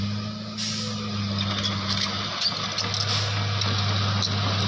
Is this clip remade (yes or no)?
no